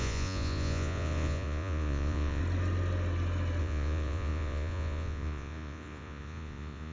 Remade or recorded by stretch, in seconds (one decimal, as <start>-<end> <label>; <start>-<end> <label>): 0.0-2.4 remade; 2.4-3.6 recorded; 3.6-6.9 remade